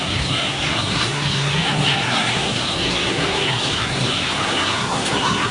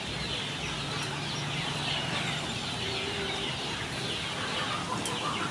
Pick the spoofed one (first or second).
first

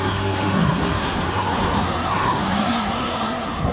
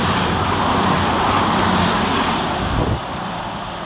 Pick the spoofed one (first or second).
first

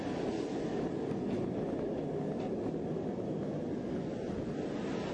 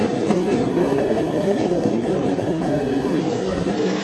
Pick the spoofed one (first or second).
second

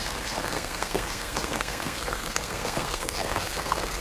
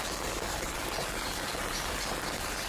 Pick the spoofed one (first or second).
first